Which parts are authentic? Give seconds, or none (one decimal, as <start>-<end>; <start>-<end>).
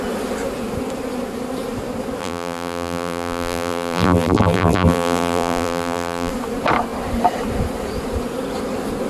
0.0-2.2; 6.3-9.1